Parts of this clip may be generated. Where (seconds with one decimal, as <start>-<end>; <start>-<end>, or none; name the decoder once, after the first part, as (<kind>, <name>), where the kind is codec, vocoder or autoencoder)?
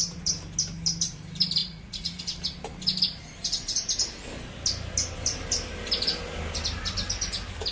1.6-2.2 (vocoder, Vocos)